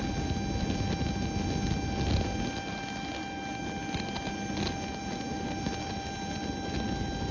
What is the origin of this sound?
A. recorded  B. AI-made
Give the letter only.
A